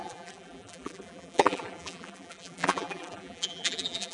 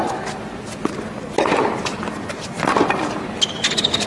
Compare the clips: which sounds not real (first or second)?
first